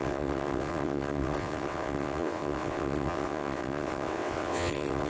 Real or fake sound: fake